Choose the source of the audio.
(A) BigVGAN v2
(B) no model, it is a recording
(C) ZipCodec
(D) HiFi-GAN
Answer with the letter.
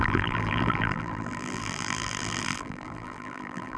A